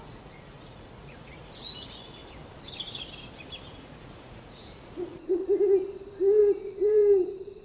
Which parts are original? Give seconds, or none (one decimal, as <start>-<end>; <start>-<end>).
2.2-3.7; 5.4-6.4